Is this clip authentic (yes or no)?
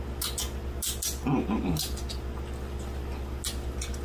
yes